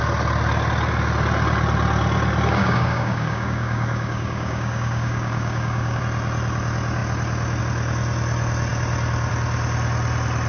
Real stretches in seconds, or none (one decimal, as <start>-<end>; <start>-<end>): 0.0-2.6; 6.0-10.5